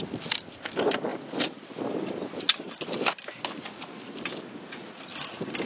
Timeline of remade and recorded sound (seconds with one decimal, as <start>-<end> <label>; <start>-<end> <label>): 0.0-5.7 recorded